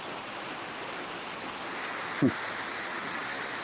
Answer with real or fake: real